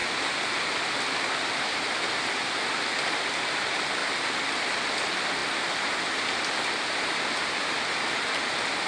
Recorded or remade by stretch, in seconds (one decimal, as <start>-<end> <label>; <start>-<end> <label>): 0.0-8.9 recorded